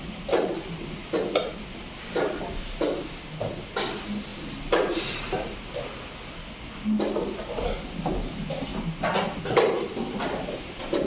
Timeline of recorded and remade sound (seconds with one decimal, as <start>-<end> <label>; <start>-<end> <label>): 0.0-4.3 recorded; 4.3-5.8 remade; 5.8-11.1 recorded